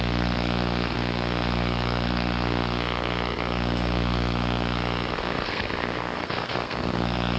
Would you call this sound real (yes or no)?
no